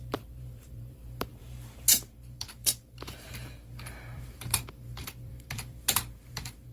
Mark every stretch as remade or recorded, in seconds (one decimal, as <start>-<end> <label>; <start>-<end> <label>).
0.0-6.7 remade